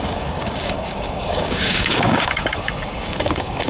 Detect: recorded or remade remade